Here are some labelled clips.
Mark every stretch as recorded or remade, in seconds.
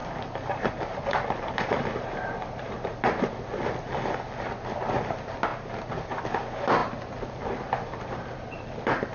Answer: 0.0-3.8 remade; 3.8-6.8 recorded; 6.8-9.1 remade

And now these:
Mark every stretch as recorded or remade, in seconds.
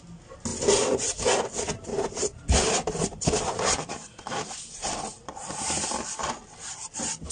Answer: 0.0-1.9 recorded; 1.9-6.3 remade; 6.3-7.3 recorded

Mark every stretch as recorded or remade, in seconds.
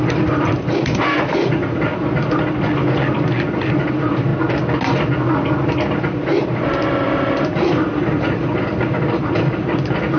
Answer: 0.0-1.9 remade; 1.9-3.6 recorded; 3.6-4.3 remade; 4.3-6.0 recorded; 6.0-10.2 remade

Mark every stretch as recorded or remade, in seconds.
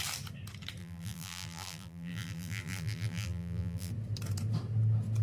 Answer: 0.0-0.8 recorded; 0.8-3.9 remade; 3.9-5.2 recorded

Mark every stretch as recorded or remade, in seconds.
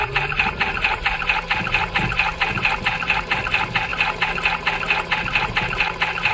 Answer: 0.0-6.3 recorded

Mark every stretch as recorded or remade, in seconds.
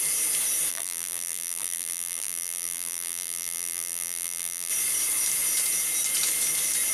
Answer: 0.0-0.7 recorded; 0.7-4.7 remade; 4.7-6.9 recorded